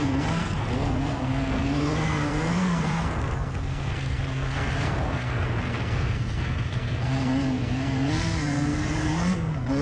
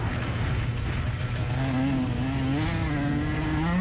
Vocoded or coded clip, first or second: first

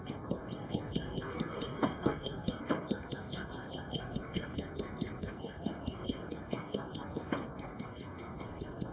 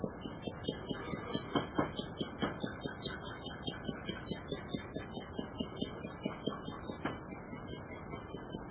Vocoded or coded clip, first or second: first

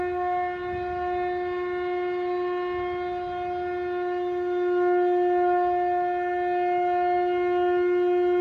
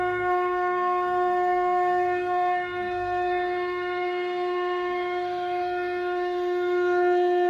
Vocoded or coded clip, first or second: second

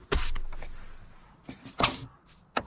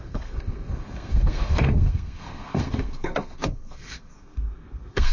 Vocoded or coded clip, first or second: second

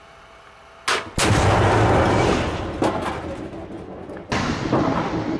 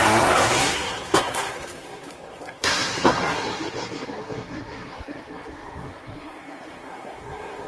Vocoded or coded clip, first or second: second